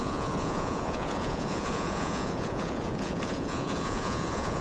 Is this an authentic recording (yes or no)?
no